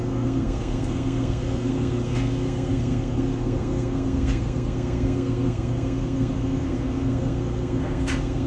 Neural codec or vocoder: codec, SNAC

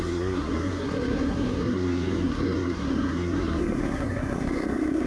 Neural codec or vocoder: codec, SNAC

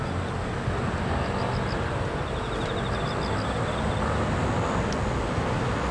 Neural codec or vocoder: none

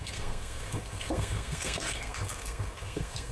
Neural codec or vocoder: codec, SNAC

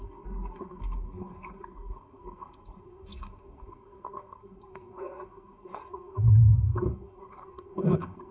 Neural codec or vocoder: codec, SNAC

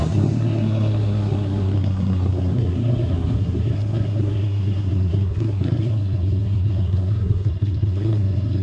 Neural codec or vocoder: codec, SNAC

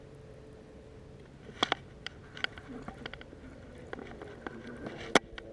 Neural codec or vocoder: none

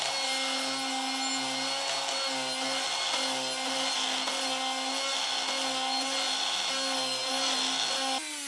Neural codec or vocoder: none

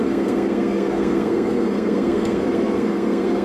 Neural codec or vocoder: codec, SNAC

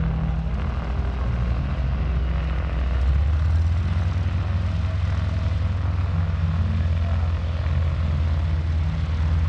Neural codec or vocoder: none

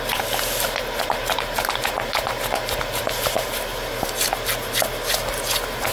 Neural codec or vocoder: none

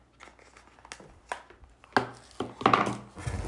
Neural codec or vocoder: none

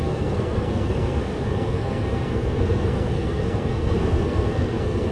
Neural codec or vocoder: codec, SNAC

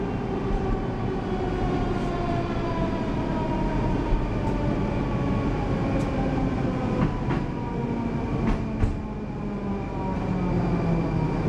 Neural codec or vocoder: none